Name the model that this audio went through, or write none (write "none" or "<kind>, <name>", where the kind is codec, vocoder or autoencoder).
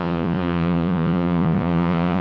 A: vocoder, Vocos